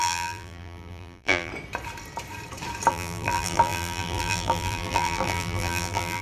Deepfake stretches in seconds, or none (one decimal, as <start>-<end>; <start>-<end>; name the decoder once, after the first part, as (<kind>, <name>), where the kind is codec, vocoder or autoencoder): 0.0-1.5 (vocoder, BigVGAN v2); 2.9-6.2